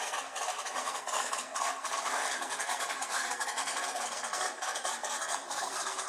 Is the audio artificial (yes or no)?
yes